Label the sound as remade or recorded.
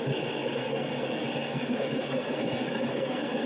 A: remade